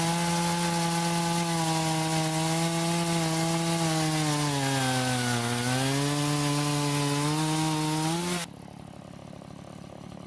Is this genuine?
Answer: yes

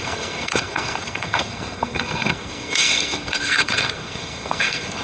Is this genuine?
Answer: no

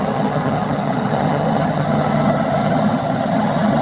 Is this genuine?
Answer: no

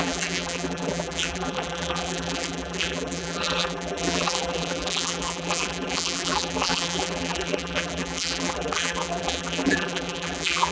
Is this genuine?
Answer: no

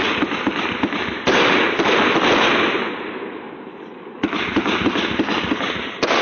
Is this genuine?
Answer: yes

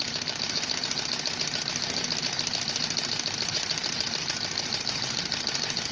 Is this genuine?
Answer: no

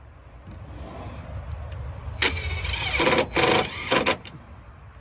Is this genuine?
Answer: yes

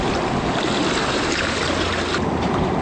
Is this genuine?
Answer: yes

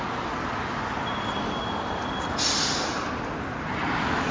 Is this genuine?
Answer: yes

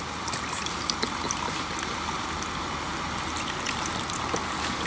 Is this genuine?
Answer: yes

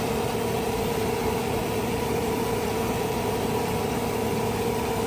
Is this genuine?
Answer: no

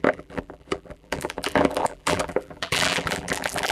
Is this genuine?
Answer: no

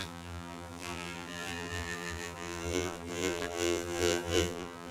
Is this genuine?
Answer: no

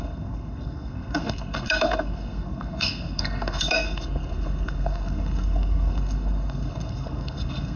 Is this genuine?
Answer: no